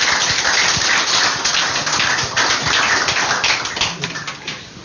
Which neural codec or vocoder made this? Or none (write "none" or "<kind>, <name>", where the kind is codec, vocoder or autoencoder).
none